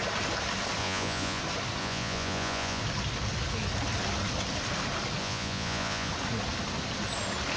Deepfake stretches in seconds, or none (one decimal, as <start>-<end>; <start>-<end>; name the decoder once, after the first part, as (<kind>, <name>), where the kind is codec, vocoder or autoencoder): 0.8-1.4 (vocoder, Vocos); 1.8-2.8; 5.2-6.1